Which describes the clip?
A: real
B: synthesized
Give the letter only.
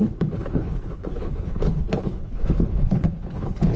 B